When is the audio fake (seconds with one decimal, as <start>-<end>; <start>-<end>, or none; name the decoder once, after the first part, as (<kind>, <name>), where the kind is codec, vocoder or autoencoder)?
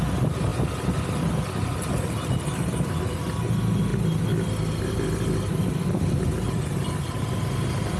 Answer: none